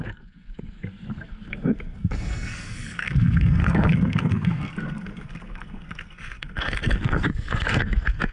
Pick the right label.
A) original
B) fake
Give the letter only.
B